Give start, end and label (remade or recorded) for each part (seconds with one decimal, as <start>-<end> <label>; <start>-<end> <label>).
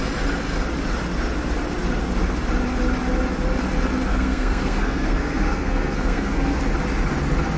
0.0-4.1 recorded; 4.1-6.6 remade; 6.6-7.6 recorded